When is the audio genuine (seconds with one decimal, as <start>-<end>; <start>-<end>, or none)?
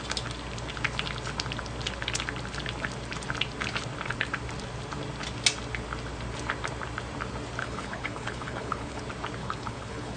0.0-7.6; 9.0-9.4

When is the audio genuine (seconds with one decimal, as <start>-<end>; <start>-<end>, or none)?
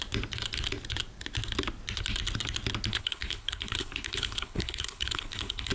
0.0-2.9